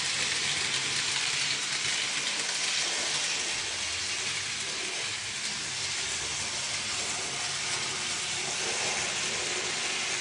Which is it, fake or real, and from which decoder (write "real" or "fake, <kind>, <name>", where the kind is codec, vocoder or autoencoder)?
real